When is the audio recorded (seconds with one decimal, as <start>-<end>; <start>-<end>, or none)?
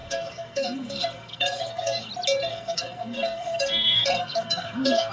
2.1-2.5